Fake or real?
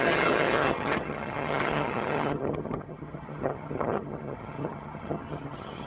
fake